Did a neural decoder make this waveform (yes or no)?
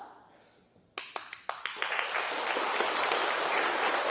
no